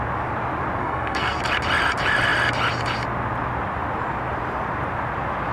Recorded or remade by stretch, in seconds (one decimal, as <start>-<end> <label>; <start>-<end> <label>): 0.0-0.8 recorded; 0.8-1.4 remade; 1.4-5.5 recorded